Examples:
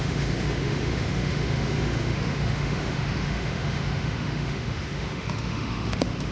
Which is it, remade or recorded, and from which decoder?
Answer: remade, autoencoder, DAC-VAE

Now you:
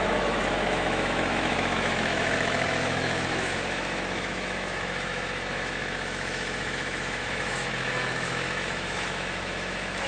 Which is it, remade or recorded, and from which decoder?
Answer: remade, autoencoder, DAC-VAE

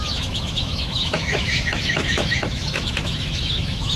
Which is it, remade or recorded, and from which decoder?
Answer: remade, autoencoder, DAC-VAE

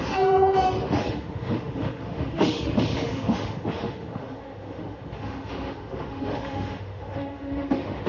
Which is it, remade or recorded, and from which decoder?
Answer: remade, autoencoder, DAC-VAE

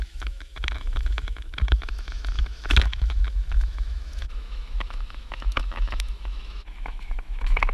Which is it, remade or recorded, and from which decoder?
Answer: remade, autoencoder, DAC-VAE